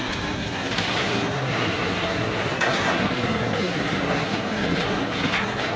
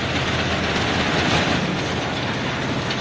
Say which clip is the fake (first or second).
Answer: first